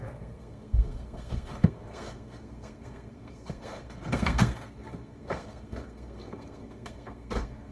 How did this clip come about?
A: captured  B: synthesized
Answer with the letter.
B